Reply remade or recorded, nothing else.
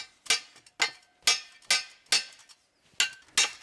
recorded